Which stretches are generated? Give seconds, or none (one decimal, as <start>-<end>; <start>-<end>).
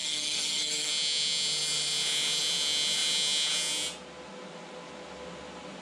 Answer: 0.0-0.9